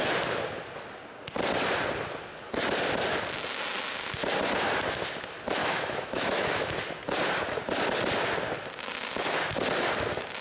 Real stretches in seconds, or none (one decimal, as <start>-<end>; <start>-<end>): 0.0-5.6; 6.8-10.4